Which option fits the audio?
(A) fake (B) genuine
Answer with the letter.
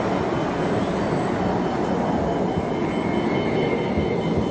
B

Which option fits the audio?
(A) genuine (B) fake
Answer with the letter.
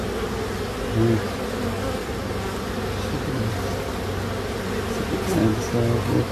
A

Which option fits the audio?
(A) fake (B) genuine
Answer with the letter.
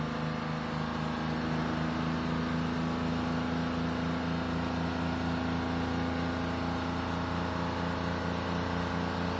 B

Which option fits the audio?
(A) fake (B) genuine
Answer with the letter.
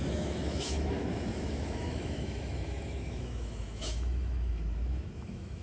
A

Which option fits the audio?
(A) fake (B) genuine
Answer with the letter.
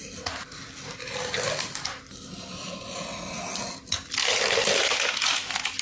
B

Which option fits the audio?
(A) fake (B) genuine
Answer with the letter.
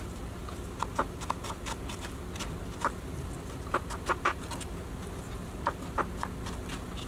B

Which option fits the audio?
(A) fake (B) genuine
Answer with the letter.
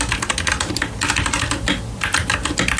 B